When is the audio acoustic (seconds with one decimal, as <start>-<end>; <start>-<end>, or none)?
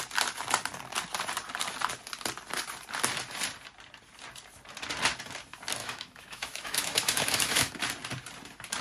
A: 0.0-5.8; 7.8-8.8